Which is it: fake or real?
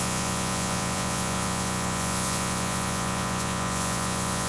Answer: fake